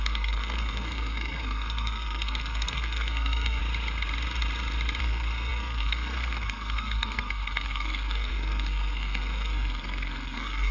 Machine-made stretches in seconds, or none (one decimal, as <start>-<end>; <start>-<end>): 0.0-3.6; 5.0-10.7